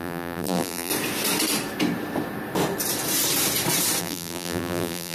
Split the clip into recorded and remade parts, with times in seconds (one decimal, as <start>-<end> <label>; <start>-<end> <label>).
0.0-0.9 remade; 0.9-4.0 recorded; 4.0-5.1 remade